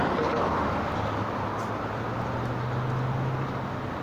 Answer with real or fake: real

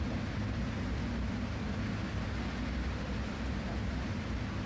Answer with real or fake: real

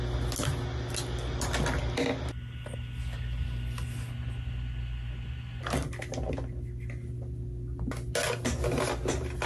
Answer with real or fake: real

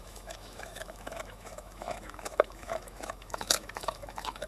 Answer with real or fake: fake